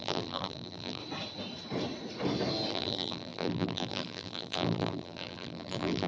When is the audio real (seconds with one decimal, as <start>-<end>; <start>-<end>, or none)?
1.0-2.7

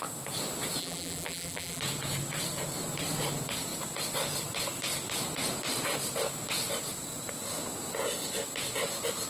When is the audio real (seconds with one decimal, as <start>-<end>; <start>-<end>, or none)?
0.0-0.8; 1.8-9.3